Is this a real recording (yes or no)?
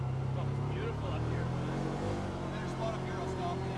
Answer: yes